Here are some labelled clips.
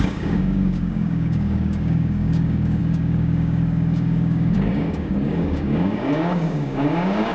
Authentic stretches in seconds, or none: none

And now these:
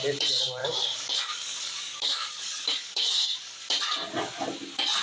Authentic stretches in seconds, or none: 0.0-0.6; 3.6-5.0

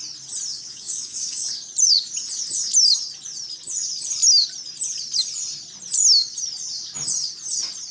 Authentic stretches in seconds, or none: 0.0-0.5; 1.5-7.9

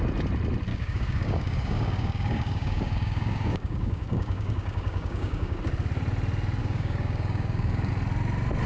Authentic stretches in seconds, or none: 0.0-0.7; 5.6-6.6; 7.9-8.7

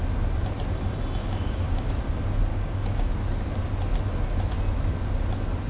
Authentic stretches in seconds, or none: 0.0-1.2; 1.9-2.5; 3.1-5.7